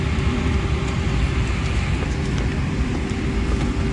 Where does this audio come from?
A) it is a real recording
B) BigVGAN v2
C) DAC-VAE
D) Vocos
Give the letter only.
A